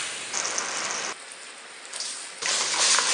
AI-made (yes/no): no